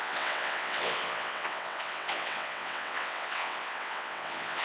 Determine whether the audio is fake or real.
fake